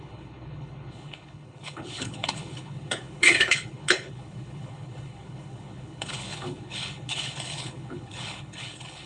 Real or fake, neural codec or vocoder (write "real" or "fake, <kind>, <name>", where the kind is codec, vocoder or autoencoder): fake, codec, HILCodec